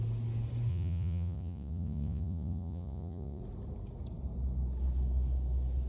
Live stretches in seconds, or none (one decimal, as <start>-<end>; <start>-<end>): 0.0-0.7; 3.4-5.9